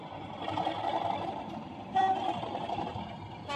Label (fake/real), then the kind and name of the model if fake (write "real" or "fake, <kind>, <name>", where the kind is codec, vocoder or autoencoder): fake, vocoder, BigVGAN v2